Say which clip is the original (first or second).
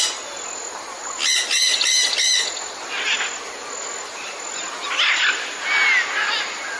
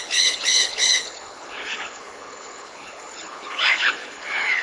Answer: first